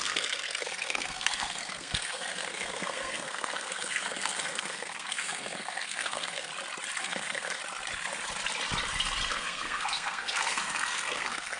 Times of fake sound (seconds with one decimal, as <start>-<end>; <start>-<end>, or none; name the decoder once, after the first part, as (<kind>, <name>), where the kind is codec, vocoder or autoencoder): 0.0-6.5 (codec, SNAC); 7.0-7.6; 9.3-11.6